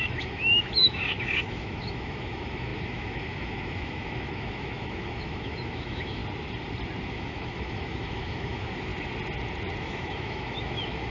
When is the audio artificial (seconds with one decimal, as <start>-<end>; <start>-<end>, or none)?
0.0-6.2; 7.1-8.9; 9.8-11.1